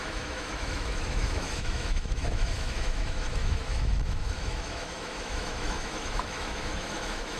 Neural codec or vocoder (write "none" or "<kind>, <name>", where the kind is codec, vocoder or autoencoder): autoencoder, DAC-VAE